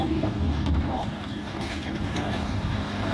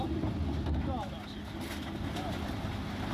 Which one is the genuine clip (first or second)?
second